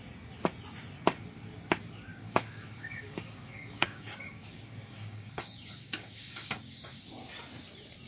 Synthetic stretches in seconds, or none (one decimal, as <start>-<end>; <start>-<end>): 2.1-7.0